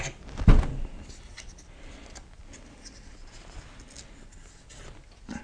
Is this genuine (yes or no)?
yes